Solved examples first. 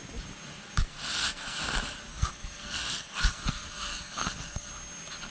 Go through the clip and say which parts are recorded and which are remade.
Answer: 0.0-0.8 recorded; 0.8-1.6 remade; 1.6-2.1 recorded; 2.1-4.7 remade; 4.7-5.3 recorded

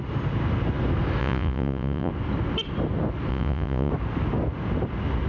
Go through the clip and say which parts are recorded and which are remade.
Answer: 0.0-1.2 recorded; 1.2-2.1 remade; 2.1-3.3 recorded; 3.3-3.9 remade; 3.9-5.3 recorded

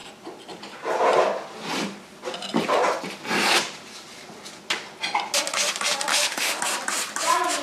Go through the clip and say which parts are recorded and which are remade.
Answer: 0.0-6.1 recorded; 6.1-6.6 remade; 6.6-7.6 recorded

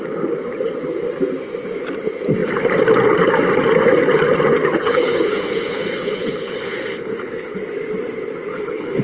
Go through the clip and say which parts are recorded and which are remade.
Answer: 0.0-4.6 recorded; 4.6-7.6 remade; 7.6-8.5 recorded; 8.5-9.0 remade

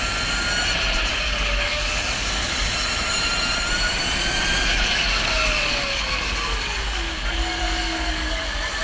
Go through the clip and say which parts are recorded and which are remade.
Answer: 0.0-1.1 recorded; 1.1-2.5 remade; 2.5-4.7 recorded; 4.7-8.4 remade; 8.4-8.8 recorded